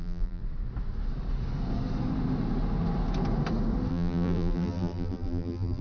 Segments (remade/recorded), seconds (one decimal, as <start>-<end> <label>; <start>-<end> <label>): 0.0-0.4 remade; 0.4-3.9 recorded; 3.9-5.8 remade